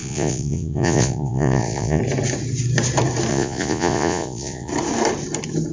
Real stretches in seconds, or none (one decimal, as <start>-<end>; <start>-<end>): 2.0-3.3; 4.7-5.7